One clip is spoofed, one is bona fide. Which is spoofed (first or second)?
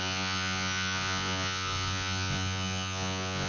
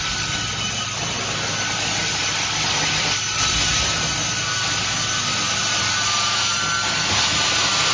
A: first